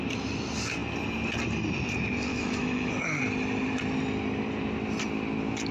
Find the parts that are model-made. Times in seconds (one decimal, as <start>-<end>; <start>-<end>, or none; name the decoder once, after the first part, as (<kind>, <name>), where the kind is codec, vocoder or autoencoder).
2.3-2.9 (autoencoder, DAC-VAE)